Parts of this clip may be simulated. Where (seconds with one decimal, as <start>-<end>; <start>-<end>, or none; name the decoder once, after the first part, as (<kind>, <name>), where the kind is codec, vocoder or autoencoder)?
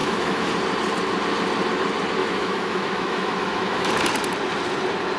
0.0-0.5 (autoencoder, DAC-VAE); 2.2-3.9